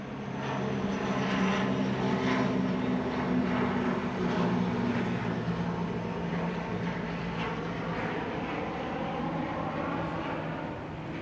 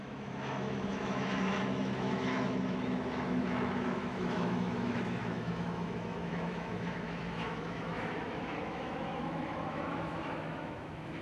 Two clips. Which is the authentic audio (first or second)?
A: first